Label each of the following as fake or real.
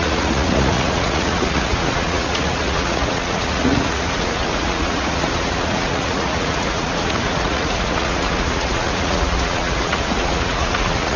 fake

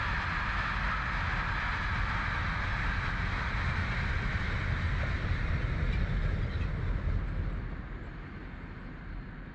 real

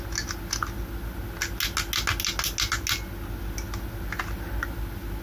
real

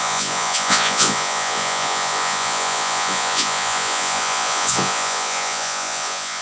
fake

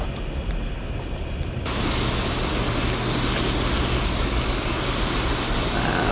real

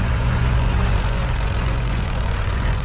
fake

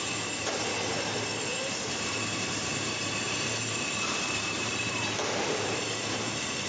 fake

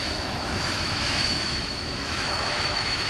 fake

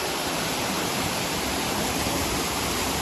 fake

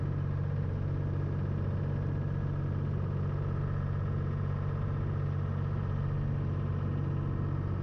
real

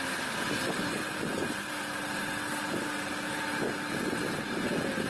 real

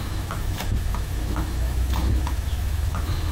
fake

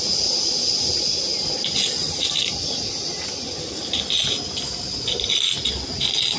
real